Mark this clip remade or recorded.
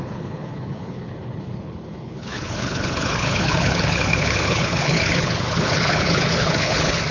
remade